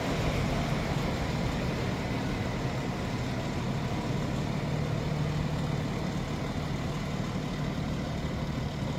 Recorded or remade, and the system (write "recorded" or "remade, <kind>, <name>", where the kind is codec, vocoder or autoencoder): recorded